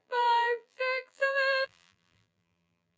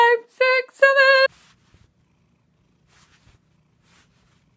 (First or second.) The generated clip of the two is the first